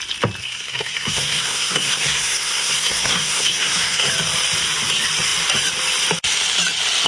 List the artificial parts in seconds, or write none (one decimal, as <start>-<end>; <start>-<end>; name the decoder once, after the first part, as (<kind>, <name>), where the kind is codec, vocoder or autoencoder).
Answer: 0.4-4.1 (codec, SNAC)